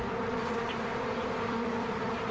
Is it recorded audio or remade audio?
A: remade